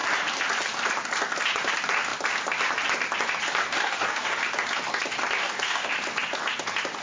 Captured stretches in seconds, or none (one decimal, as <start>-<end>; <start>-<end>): 0.0-3.6; 4.4-5.4; 5.9-7.0